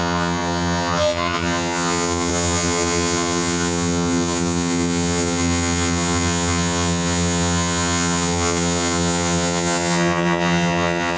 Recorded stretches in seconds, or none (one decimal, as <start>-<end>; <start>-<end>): none